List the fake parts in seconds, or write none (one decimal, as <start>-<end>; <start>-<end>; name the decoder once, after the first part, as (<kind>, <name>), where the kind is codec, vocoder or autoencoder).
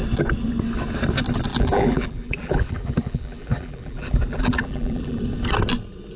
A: 1.5-5.2 (vocoder, BigVGAN v2)